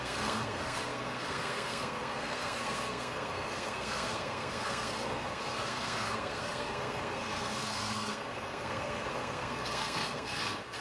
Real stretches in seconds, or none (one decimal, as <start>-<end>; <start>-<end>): none